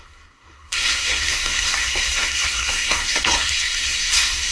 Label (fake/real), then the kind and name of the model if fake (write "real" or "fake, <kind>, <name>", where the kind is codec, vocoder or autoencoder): fake, codec, SNAC